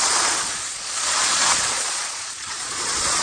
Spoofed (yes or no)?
yes